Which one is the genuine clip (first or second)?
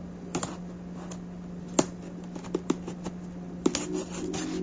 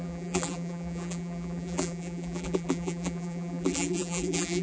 first